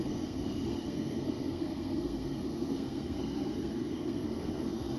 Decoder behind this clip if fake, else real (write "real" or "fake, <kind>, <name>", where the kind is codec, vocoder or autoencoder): fake, codec, SNAC